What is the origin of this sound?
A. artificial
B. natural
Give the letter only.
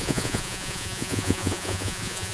A